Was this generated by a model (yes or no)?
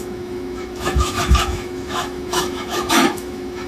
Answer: yes